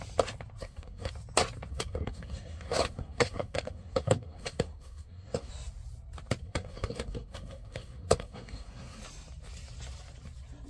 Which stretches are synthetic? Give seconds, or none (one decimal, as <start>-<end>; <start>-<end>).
0.6-1.1; 1.7-5.5; 6.4-9.0